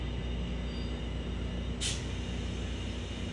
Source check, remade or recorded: recorded